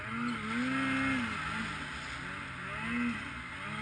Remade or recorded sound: recorded